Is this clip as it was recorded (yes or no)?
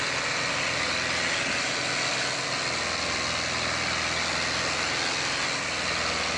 yes